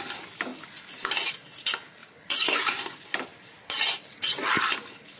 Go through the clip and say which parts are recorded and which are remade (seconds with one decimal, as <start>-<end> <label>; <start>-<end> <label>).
0.0-2.0 recorded; 2.0-2.8 remade; 2.8-5.2 recorded